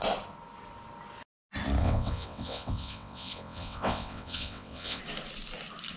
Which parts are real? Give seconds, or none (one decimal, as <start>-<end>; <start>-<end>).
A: 0.0-1.8; 5.0-6.0